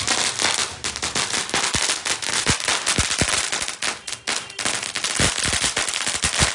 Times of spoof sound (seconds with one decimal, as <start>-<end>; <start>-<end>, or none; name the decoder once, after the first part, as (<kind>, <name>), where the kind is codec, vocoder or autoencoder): 0.0-3.8 (vocoder, BigVGAN v2); 5.6-6.5